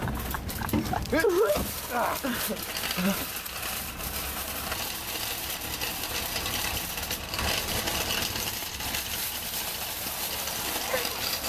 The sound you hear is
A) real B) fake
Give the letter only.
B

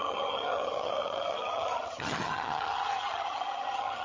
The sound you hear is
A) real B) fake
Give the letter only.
B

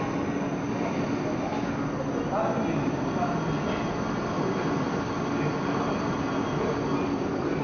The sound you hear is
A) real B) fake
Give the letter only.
A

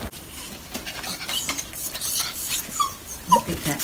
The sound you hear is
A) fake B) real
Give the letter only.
A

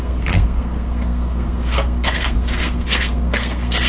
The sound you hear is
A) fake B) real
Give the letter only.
A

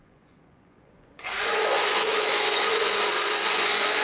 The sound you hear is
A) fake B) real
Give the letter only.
A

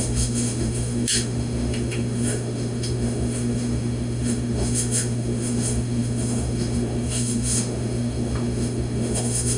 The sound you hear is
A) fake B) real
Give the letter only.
A